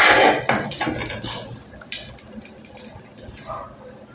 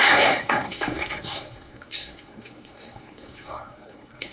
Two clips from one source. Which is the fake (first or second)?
second